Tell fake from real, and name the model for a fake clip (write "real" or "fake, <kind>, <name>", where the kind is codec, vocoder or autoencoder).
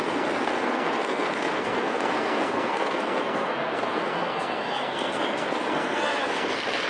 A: fake, codec, SNAC